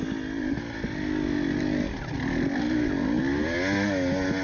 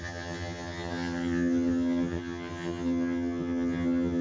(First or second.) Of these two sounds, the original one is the first